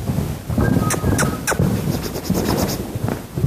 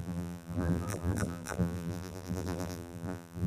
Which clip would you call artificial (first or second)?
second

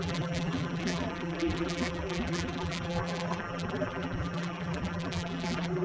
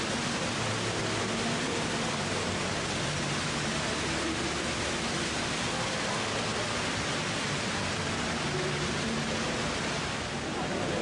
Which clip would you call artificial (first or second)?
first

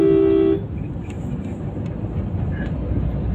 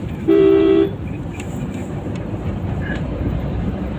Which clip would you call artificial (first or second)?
second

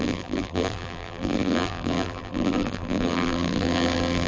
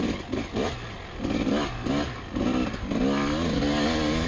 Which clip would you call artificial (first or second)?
first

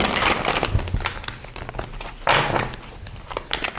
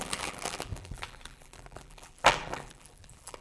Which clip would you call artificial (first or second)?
second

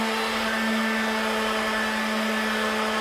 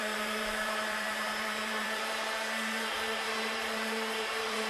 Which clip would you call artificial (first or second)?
second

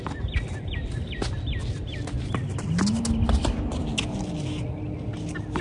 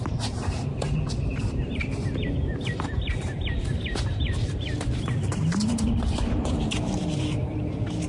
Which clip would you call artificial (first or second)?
second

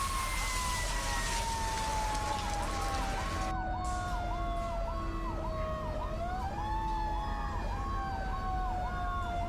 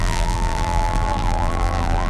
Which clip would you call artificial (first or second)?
second